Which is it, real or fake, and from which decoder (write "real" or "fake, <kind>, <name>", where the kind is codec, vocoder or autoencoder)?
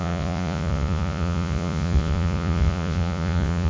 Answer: fake, vocoder, Vocos